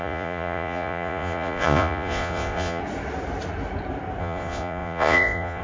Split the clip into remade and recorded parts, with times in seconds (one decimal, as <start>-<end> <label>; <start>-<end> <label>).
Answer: 0.0-2.8 remade; 2.8-4.2 recorded; 4.2-5.6 remade